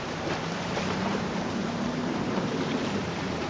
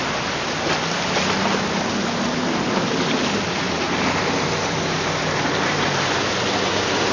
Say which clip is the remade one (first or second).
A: first